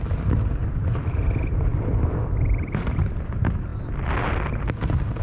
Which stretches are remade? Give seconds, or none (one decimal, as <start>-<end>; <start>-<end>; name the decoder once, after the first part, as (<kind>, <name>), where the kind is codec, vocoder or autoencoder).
none